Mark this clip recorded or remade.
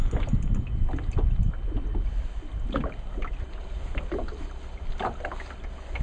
recorded